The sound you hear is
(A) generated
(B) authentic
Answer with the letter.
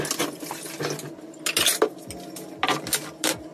B